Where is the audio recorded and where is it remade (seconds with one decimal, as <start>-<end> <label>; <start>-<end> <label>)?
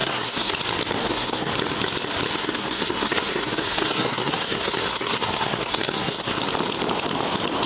0.0-0.5 remade; 0.5-1.0 recorded; 1.0-1.5 remade; 1.5-2.4 recorded; 2.4-6.4 remade; 6.4-7.7 recorded